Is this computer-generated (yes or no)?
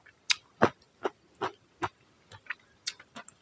no